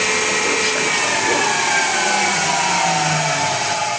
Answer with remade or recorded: recorded